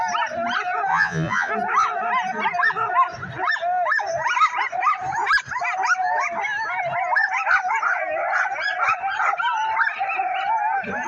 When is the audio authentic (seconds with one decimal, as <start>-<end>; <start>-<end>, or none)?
0.0-0.9; 1.5-11.1